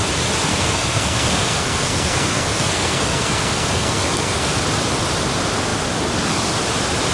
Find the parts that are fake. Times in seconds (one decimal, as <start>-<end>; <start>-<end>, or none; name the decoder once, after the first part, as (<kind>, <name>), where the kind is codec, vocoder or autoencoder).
0.5-4.6 (codec, SNAC)